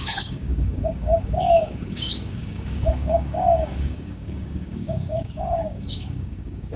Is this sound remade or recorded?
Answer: remade